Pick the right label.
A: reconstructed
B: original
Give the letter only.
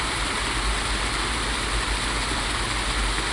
B